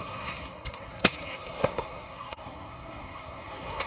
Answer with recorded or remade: remade